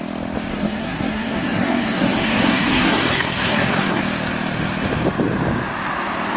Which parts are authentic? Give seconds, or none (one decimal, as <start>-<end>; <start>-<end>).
0.0-0.5; 4.0-6.4